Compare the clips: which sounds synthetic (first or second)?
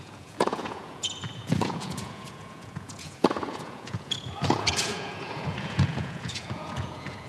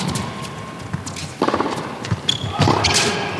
first